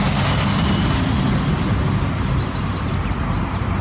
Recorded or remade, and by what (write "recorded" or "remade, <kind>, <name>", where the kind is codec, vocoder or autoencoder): recorded